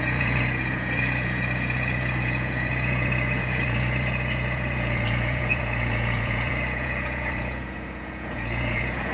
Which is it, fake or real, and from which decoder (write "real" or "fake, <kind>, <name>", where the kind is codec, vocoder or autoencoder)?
fake, vocoder, Vocos